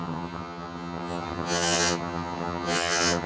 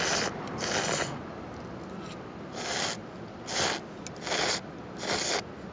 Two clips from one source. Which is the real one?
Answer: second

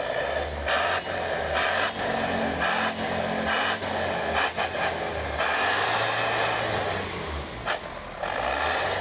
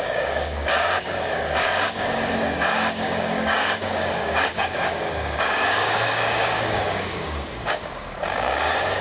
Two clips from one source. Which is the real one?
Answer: first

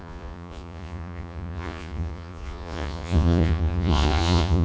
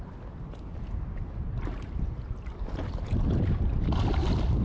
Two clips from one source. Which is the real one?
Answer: second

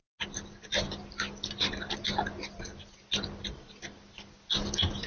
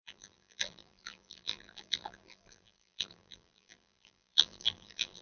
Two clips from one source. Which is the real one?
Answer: first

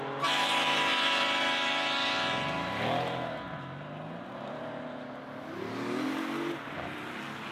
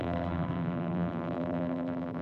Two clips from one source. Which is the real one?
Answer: first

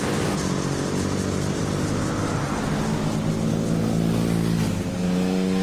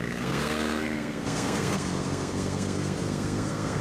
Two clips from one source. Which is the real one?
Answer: first